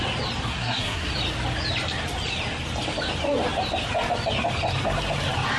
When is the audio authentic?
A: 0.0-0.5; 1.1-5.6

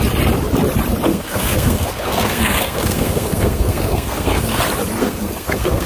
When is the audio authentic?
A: 0.0-1.1; 4.6-5.0